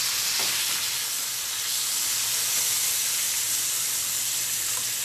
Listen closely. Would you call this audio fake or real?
real